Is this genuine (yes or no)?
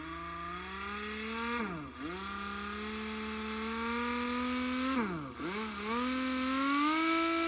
yes